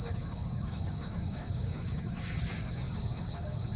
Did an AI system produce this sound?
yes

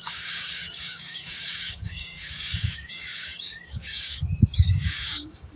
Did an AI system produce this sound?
yes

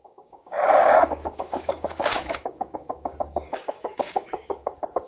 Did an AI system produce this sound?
yes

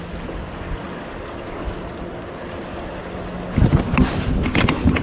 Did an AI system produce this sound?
no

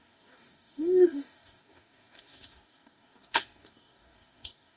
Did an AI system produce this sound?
yes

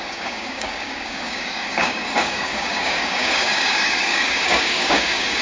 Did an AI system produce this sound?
yes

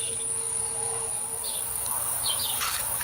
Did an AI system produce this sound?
yes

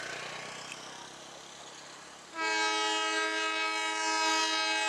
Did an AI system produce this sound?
no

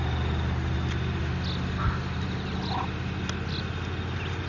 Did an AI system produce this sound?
no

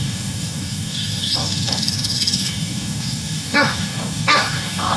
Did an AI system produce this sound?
yes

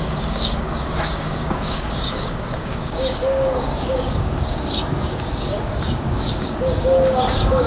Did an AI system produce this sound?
yes